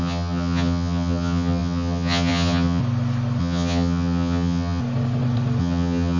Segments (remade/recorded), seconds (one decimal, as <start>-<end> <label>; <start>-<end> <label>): 0.0-2.8 remade; 2.8-3.4 recorded; 3.4-4.8 remade; 4.8-5.6 recorded; 5.6-6.2 remade